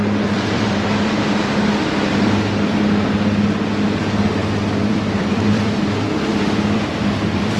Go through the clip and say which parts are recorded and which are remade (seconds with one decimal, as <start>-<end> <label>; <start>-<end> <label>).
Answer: 0.0-1.4 remade; 1.4-4.4 recorded; 4.4-5.8 remade; 5.8-6.3 recorded; 6.3-7.6 remade